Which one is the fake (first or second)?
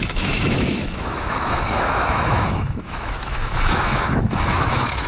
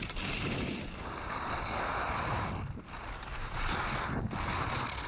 first